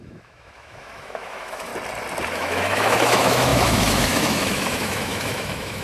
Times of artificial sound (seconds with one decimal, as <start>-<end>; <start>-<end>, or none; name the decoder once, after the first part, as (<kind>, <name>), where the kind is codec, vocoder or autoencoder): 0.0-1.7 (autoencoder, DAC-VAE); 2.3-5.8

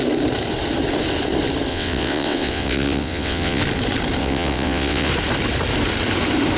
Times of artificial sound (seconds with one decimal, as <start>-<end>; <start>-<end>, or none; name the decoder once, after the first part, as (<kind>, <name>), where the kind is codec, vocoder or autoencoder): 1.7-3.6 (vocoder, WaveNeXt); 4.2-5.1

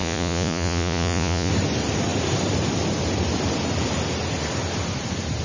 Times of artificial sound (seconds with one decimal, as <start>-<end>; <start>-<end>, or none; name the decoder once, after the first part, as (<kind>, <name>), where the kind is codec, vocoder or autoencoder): 0.0-1.5 (vocoder, Vocos)

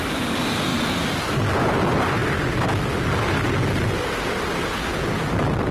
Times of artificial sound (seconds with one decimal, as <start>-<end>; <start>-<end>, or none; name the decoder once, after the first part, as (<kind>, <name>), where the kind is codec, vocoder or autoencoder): none

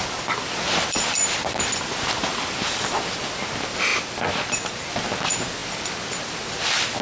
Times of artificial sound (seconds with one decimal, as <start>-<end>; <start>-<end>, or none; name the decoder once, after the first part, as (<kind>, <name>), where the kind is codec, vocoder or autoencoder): 3.9-4.9 (vocoder, BigVGAN v2); 5.6-6.3